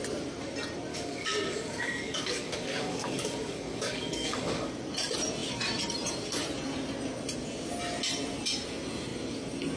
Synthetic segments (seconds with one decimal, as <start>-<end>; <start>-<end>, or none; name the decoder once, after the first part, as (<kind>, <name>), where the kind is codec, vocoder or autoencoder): 0.9-4.7 (codec, DAC)